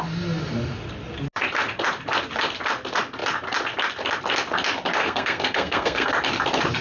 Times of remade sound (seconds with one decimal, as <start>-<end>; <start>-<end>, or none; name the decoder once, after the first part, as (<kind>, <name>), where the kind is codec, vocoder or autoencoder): 5.0-6.1 (codec, SNAC)